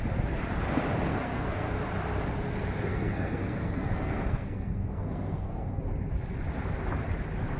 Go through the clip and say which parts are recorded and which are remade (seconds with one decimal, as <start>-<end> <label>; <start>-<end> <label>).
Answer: 0.0-1.1 recorded; 1.1-1.7 remade; 1.7-2.9 recorded; 2.9-5.8 remade; 5.8-7.6 recorded